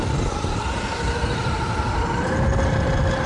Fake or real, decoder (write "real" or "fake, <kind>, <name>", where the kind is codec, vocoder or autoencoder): real